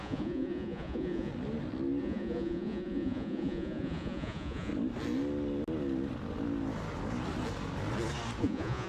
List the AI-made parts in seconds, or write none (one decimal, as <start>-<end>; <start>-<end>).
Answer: 0.0-1.3; 2.0-4.7; 8.4-8.9